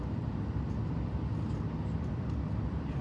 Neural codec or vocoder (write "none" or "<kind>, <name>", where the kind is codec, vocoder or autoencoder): vocoder, BigVGAN v2